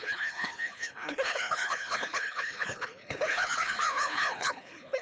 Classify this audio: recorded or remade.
remade